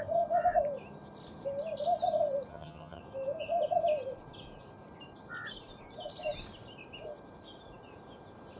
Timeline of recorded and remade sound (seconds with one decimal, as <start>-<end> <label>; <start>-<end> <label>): 0.0-2.5 recorded; 2.5-3.0 remade; 3.0-8.6 recorded